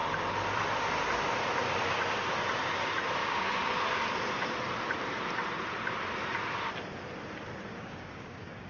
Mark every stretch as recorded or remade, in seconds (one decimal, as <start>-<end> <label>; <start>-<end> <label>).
0.0-3.2 recorded; 3.2-3.8 remade; 3.8-7.7 recorded; 7.7-8.7 remade

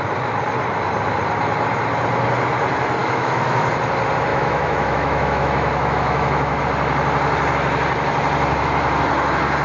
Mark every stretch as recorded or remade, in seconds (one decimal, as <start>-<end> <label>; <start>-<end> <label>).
0.0-3.0 recorded; 3.0-3.7 remade; 3.7-4.3 recorded; 4.3-6.6 remade; 6.6-9.6 recorded

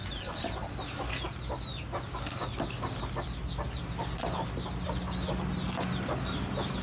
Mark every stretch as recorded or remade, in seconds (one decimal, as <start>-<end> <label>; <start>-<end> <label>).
0.0-0.6 remade; 0.6-6.8 recorded

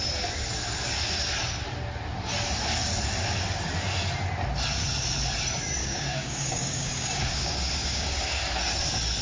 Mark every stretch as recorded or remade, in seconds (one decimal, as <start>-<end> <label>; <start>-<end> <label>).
0.0-5.8 recorded; 5.8-8.4 remade; 8.4-9.2 recorded

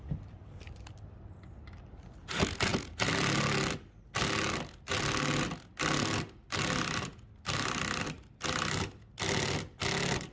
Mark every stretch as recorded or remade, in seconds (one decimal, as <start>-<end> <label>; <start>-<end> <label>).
0.0-10.3 recorded

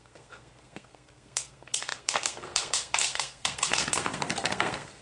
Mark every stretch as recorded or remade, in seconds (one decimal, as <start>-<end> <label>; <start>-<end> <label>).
0.0-5.0 remade

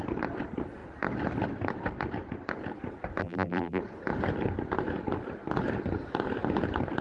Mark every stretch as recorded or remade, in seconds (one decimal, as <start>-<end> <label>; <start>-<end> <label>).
0.0-3.2 recorded; 3.2-3.8 remade; 3.8-7.0 recorded